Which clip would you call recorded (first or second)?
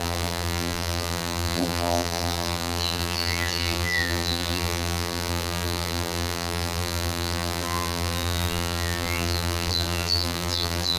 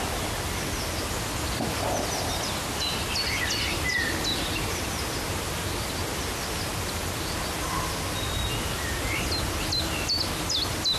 second